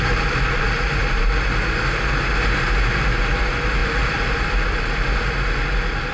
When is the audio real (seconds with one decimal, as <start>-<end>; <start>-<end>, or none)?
0.0-3.8; 4.8-6.1